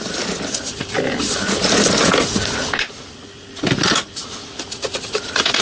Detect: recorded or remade recorded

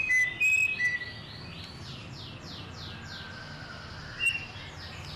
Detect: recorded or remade recorded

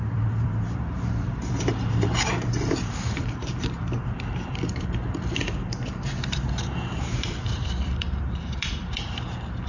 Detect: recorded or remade remade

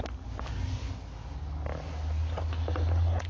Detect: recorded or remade recorded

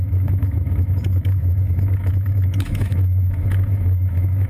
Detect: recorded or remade remade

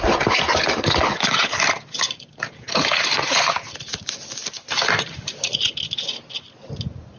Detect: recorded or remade recorded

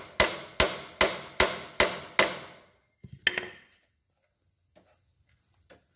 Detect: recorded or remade recorded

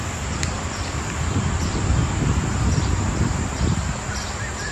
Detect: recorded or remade remade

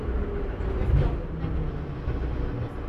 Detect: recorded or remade recorded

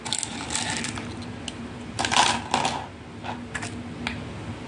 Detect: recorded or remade recorded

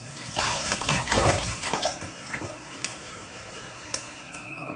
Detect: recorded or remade remade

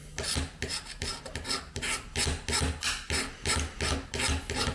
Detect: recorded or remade recorded